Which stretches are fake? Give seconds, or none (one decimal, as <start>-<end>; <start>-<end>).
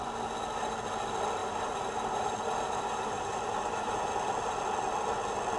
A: 1.4-4.1